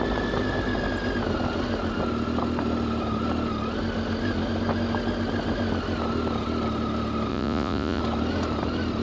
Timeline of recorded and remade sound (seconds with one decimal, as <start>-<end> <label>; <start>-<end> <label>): 0.0-7.3 recorded; 7.3-8.0 remade; 8.0-9.0 recorded